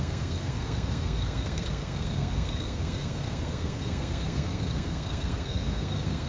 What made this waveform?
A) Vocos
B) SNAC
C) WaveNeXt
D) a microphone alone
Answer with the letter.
B